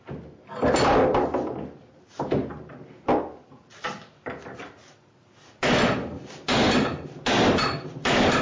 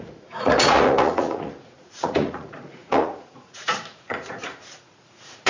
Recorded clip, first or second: first